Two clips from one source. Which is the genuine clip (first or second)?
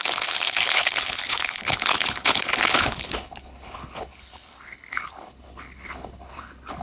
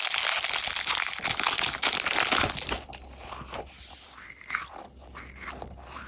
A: second